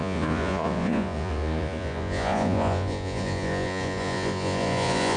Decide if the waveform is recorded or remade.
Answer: remade